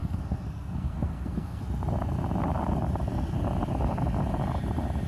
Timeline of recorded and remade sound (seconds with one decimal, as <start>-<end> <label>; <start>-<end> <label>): 0.0-1.6 remade; 1.6-5.1 recorded